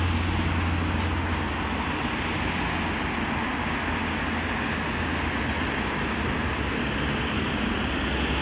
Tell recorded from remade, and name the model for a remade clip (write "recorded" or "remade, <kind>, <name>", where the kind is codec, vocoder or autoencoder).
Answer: recorded